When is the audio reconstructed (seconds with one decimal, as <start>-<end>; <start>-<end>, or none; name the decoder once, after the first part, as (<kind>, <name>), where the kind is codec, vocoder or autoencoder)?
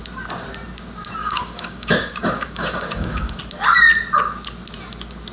1.2-3.4 (codec, DAC)